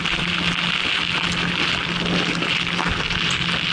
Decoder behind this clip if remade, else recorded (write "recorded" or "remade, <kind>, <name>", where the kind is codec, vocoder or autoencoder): recorded